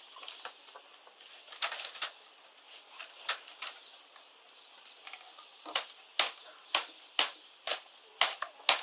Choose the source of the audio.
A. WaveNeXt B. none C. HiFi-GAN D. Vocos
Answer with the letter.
B